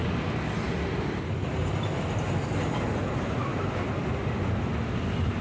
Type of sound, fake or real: real